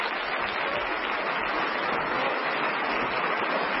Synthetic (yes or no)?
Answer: no